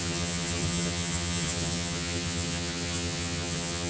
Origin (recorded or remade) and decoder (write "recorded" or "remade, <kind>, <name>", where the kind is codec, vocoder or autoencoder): remade, vocoder, HiFi-GAN